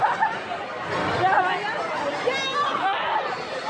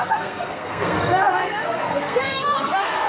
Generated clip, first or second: second